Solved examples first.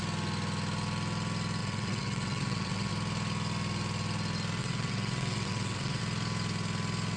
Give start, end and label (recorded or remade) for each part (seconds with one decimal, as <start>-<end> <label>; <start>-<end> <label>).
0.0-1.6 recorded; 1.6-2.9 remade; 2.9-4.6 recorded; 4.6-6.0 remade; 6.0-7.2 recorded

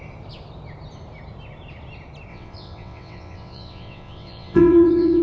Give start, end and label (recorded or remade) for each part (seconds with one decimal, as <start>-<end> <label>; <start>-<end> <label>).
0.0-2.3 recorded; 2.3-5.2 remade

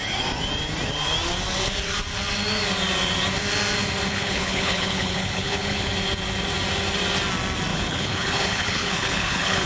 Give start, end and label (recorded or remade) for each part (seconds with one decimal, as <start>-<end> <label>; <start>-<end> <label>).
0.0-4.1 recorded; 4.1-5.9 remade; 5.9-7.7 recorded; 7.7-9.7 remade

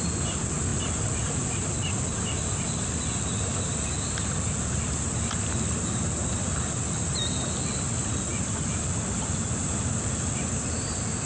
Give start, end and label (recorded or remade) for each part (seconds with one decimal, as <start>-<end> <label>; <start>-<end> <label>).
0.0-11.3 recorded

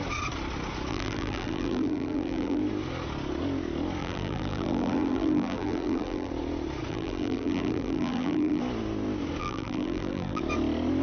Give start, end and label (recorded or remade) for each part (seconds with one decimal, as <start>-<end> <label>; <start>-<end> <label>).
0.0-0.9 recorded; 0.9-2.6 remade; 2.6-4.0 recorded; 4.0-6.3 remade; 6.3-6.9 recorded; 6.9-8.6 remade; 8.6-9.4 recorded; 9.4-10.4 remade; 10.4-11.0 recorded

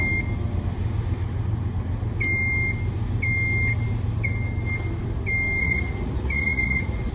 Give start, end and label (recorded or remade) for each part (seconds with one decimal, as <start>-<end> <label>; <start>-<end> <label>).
0.0-5.6 recorded; 5.6-7.1 remade

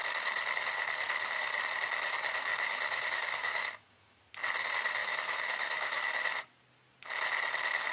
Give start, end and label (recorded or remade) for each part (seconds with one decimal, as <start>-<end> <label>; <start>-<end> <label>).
0.0-2.5 recorded; 2.5-4.2 remade; 4.2-5.0 recorded; 5.0-6.4 remade; 6.4-7.9 recorded

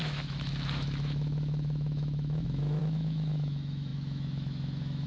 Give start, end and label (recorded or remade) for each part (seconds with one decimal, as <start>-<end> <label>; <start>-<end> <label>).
0.0-5.1 remade